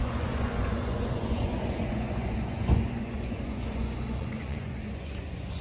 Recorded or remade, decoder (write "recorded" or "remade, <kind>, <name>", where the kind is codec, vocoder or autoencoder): remade, vocoder, Vocos